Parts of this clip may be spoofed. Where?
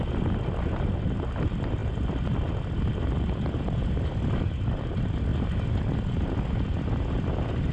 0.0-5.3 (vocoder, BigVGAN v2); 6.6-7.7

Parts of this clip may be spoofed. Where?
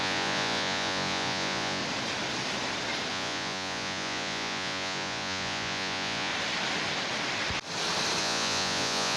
0.0-1.8 (vocoder, Vocos); 3.1-6.3; 8.2-9.2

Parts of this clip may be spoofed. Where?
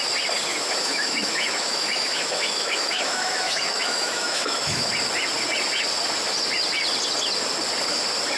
0.5-4.9 (autoencoder, DAC-VAE)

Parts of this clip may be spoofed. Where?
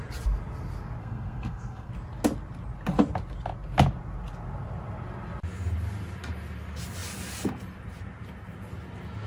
1.0-1.9 (codec, SNAC)